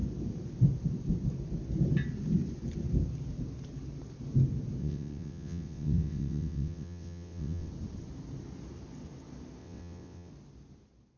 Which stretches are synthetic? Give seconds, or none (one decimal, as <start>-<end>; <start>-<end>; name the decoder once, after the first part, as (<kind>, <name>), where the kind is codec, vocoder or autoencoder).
4.8-7.7 (vocoder, WaveNeXt); 9.6-10.3